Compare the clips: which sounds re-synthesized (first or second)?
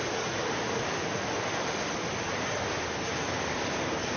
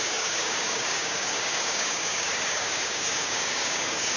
second